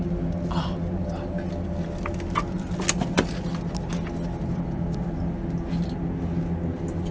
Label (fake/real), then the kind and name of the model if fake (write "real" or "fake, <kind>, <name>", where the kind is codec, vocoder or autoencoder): real